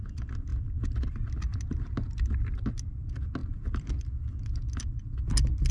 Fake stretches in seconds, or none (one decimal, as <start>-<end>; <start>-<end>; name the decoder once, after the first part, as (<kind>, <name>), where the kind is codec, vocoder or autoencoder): none